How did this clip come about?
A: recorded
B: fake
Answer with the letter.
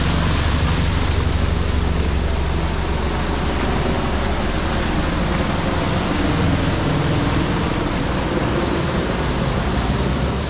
A